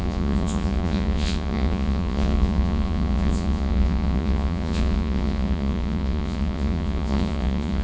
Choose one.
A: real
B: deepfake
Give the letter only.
B